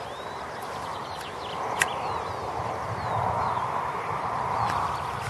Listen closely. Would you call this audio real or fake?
real